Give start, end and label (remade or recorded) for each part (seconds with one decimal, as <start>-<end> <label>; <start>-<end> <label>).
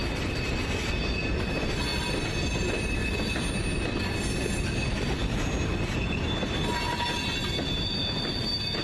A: 0.0-8.8 recorded